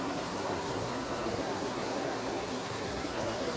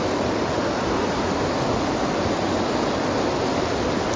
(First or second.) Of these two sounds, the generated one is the first